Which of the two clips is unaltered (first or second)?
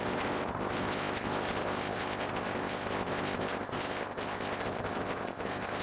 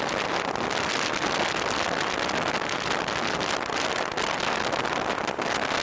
second